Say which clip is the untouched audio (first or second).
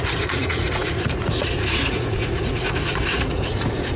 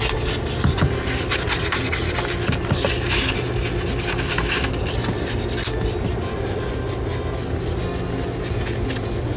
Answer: second